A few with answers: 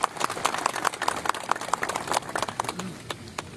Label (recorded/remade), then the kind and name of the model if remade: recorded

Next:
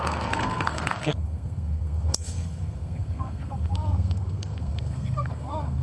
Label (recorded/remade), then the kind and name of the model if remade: remade, codec, SNAC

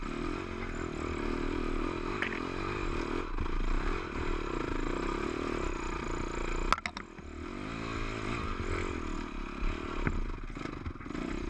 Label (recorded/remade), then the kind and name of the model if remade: recorded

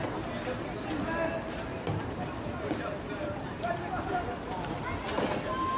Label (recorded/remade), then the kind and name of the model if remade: recorded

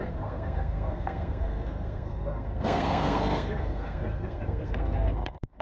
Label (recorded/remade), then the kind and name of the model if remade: remade, codec, SNAC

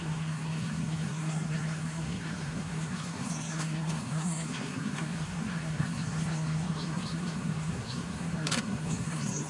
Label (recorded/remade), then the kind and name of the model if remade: remade, codec, SNAC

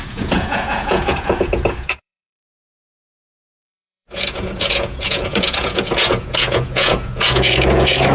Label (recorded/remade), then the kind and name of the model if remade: remade, vocoder, Vocos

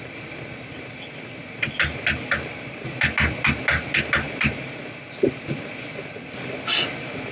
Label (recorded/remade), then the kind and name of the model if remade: recorded